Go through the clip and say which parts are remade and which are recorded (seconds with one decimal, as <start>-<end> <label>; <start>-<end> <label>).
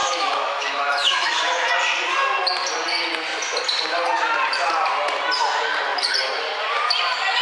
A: 0.0-1.7 remade; 1.7-7.4 recorded